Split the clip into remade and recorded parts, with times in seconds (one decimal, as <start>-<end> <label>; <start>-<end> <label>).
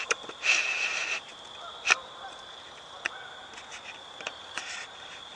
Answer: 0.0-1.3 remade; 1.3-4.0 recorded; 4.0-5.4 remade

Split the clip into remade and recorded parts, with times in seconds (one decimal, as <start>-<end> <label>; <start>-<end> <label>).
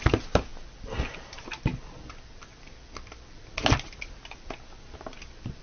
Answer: 0.0-5.6 recorded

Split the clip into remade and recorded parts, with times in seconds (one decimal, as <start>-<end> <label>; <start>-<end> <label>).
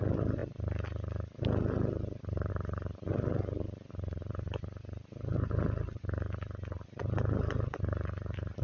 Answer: 0.0-8.6 recorded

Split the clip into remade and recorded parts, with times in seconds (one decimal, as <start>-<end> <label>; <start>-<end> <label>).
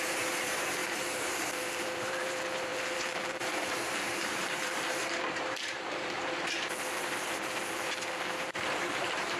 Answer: 0.0-9.4 remade